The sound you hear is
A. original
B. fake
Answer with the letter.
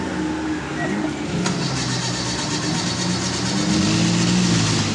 A